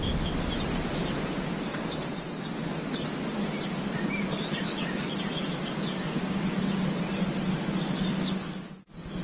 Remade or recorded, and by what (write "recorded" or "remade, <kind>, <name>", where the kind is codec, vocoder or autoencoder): recorded